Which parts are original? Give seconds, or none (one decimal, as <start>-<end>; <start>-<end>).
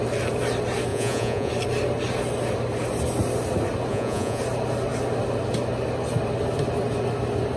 0.0-0.9; 1.5-3.9; 4.4-7.6